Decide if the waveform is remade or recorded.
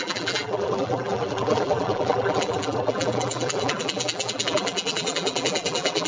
remade